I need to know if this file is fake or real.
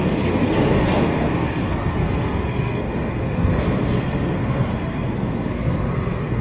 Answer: fake